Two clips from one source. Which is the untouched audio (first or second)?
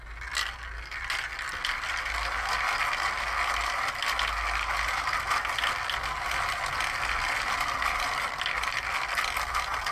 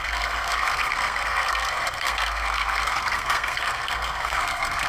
first